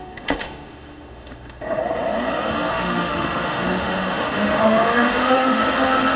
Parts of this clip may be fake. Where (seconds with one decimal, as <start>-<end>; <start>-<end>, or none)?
0.0-1.8; 2.7-5.6